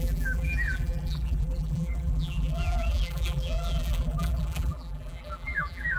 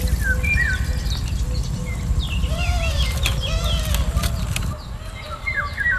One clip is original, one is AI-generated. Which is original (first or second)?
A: second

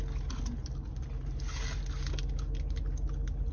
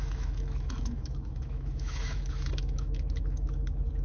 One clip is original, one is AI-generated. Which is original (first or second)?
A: first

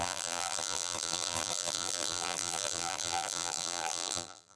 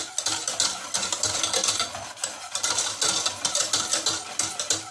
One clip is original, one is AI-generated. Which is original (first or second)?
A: second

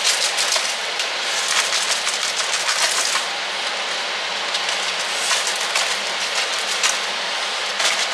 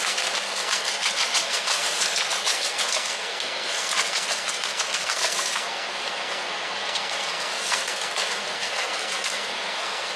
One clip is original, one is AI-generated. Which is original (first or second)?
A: first